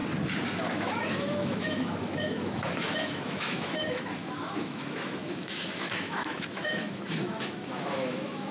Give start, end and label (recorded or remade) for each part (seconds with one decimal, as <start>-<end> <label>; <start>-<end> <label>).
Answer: 0.0-0.6 recorded; 0.6-8.5 remade